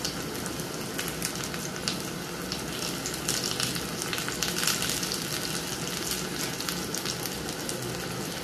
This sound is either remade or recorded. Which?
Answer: recorded